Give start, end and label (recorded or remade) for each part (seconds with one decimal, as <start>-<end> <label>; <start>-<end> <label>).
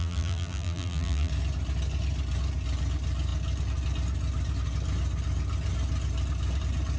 0.0-1.3 remade; 1.3-7.0 recorded